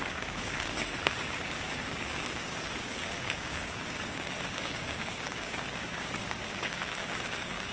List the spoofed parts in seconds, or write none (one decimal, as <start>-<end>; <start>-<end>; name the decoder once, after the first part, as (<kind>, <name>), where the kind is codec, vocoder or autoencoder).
0.0-7.7 (codec, DAC)